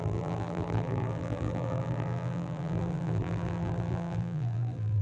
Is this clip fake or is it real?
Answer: fake